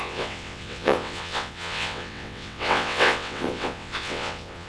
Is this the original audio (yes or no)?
no